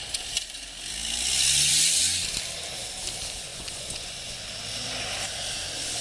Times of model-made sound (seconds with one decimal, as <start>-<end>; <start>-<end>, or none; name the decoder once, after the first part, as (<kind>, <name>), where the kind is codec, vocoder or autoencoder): 3.5-4.4 (vocoder, Vocos)